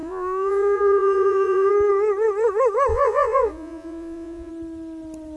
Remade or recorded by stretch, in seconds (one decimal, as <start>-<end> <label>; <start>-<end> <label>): 0.0-1.7 remade; 1.7-2.9 recorded; 2.9-4.5 remade; 4.5-5.4 recorded